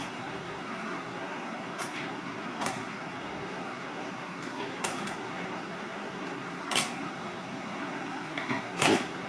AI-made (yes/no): yes